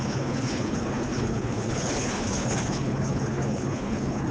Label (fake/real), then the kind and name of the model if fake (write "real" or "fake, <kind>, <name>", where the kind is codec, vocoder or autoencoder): fake, codec, HILCodec